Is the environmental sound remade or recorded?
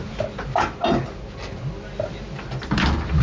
recorded